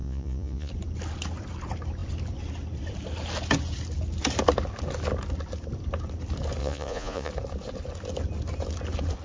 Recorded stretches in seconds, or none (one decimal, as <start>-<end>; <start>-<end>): 0.7-6.6; 7.3-9.2